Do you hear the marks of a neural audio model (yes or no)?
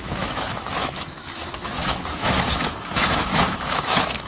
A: yes